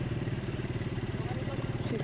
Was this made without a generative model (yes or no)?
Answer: no